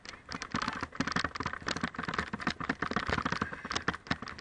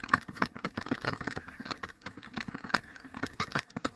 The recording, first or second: first